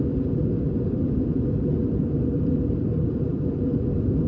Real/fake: real